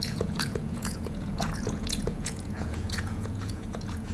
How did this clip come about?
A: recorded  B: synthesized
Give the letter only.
B